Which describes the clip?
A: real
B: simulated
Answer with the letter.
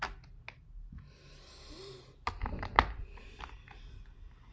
A